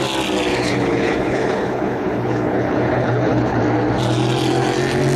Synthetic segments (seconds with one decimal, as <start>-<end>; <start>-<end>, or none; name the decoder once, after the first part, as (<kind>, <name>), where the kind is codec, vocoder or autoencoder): 0.5-3.6 (codec, HILCodec)